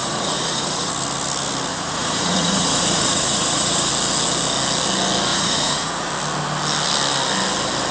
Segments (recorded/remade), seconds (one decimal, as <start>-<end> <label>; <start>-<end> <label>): 0.0-0.9 remade; 0.9-1.7 recorded; 1.7-3.9 remade; 3.9-5.3 recorded; 5.3-6.1 remade; 6.1-7.9 recorded